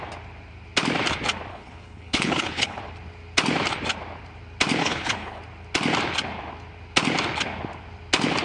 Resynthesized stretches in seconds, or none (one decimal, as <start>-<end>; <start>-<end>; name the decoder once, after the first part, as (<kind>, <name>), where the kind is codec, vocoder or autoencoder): 1.5-2.8 (codec, HILCodec); 4.8-5.4